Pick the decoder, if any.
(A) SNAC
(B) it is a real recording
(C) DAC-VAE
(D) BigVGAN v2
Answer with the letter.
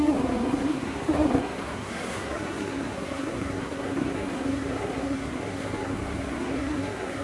A